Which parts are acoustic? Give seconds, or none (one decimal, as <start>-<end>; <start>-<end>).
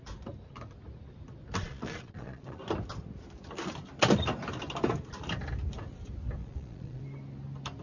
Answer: 0.0-1.6; 2.6-6.4; 7.0-7.8